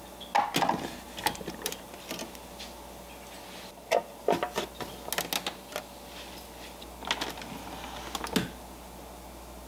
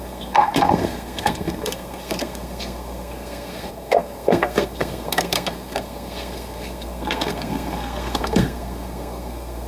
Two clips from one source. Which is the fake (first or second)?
second